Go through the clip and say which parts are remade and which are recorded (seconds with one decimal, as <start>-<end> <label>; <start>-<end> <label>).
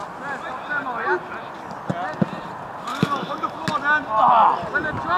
0.0-2.9 recorded; 2.9-3.5 remade; 3.5-5.2 recorded